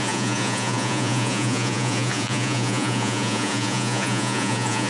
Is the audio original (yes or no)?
no